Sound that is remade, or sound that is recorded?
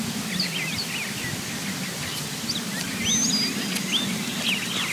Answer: recorded